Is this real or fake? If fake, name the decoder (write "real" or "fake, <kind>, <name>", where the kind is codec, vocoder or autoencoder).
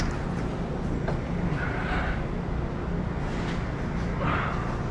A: real